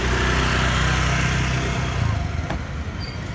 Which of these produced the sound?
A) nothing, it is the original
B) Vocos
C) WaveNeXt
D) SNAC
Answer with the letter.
A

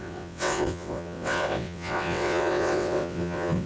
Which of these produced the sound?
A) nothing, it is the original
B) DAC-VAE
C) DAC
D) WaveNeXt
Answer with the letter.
D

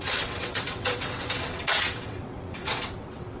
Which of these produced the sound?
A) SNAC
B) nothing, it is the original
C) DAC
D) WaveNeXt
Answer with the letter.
D